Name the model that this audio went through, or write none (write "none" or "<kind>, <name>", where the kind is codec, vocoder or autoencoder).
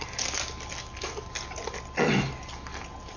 none